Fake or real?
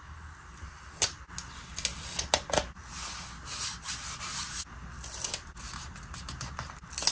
real